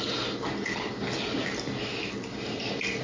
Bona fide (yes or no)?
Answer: yes